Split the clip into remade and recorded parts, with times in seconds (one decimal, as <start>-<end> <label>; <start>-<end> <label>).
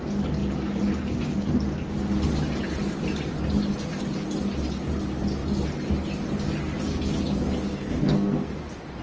0.0-7.7 recorded; 7.7-8.6 remade; 8.6-9.0 recorded